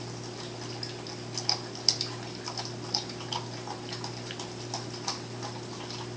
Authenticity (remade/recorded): recorded